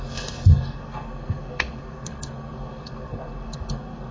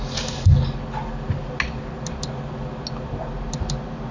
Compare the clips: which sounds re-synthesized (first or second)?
first